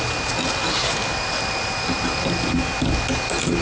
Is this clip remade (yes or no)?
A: no